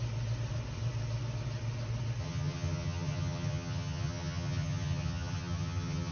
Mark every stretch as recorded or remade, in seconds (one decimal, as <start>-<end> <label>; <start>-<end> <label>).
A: 0.0-2.2 recorded; 2.2-6.1 remade